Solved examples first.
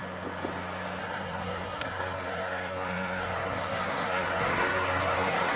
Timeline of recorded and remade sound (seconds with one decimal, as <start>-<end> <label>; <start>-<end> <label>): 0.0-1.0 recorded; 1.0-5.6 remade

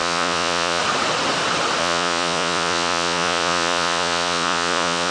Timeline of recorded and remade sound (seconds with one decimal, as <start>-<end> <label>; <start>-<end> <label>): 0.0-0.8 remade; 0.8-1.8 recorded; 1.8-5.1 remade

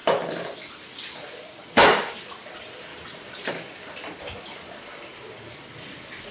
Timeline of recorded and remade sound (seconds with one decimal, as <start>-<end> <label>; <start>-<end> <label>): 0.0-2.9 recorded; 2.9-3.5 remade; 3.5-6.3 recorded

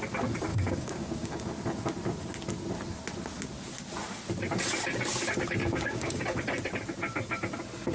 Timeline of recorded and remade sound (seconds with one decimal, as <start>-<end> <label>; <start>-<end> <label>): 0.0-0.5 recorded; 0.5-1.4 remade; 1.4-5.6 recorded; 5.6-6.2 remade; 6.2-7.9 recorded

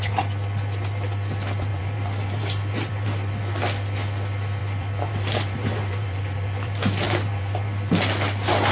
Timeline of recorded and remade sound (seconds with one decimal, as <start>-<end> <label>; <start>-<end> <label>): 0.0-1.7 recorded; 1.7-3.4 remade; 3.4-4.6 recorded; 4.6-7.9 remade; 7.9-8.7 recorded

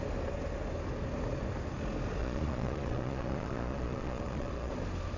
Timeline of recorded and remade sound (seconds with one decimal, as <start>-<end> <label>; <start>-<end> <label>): 0.0-2.2 recorded; 2.2-4.7 remade; 4.7-5.2 recorded

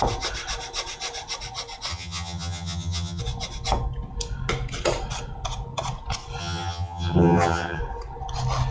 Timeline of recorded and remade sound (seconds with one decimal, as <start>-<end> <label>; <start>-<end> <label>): 0.0-1.9 recorded; 1.9-3.2 remade; 3.2-6.4 recorded; 6.4-7.8 remade; 7.8-8.7 recorded